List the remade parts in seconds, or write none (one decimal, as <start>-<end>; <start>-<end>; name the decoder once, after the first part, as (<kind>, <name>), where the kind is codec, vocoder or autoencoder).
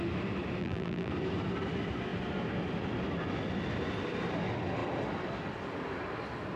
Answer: 0.6-1.1 (vocoder, BigVGAN v2)